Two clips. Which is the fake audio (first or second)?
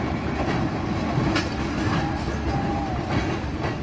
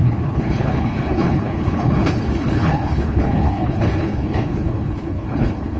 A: second